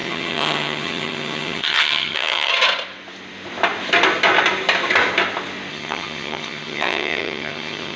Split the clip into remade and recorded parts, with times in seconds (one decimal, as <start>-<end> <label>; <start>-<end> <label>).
0.0-2.5 remade; 2.5-5.7 recorded; 5.7-8.0 remade